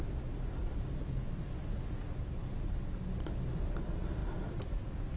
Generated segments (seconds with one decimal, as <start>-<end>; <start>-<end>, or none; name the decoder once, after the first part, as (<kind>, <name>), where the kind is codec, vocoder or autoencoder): none

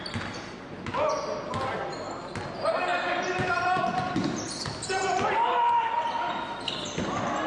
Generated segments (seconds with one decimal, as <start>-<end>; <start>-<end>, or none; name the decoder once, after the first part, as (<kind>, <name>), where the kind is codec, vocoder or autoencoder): 2.9-6.3 (vocoder, BigVGAN v2)

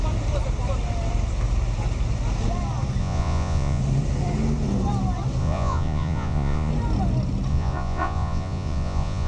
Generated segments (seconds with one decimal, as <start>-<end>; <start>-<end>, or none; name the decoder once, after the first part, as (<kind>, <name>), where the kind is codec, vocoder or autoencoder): 3.0-3.8 (vocoder, Vocos); 5.4-6.7; 7.5-9.3

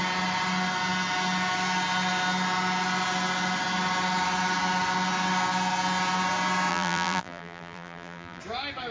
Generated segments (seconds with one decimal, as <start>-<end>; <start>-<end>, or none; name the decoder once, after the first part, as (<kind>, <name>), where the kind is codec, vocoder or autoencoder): 6.7-8.4 (vocoder, BigVGAN v2)